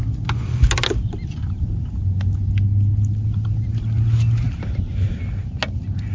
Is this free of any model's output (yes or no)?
yes